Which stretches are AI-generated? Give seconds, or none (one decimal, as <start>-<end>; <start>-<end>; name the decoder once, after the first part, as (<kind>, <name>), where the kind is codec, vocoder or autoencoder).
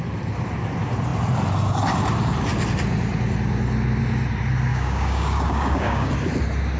4.7-6.1 (codec, DAC)